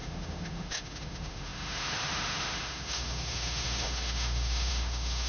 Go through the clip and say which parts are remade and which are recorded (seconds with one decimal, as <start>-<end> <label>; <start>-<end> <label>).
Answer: 0.0-5.3 remade